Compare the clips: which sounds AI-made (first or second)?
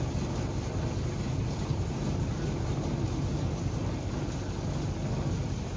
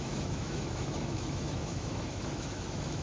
second